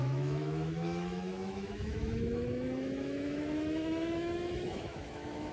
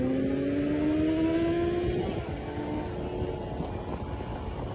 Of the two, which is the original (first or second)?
second